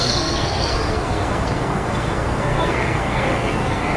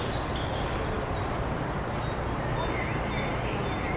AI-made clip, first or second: first